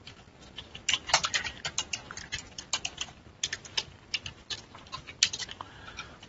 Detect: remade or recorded recorded